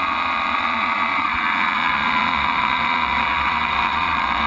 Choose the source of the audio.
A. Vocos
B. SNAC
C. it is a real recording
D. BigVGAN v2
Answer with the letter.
A